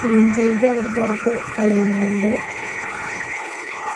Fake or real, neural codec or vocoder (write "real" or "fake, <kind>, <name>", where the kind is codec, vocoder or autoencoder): fake, codec, HILCodec